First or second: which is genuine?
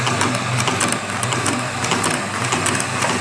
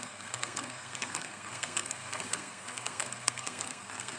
first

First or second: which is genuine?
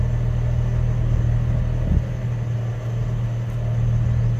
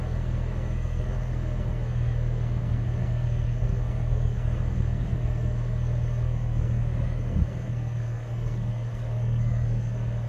first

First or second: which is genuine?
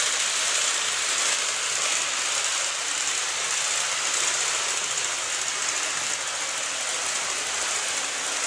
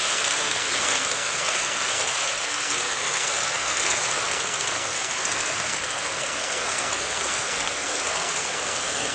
first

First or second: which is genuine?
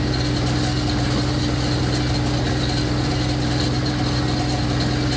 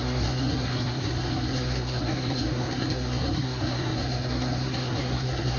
first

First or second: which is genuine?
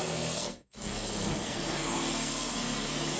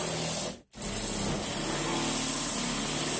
second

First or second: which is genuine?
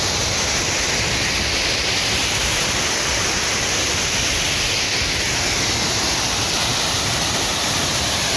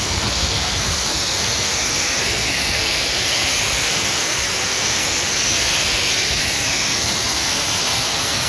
first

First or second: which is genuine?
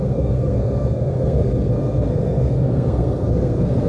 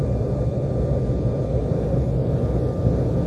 second